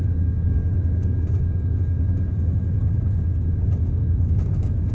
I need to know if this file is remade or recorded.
remade